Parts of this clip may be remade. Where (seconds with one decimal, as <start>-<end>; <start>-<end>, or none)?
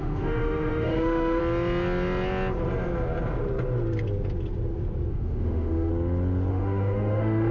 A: 0.0-1.4; 5.1-5.9; 6.5-7.5